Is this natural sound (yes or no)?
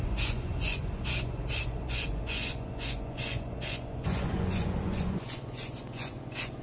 no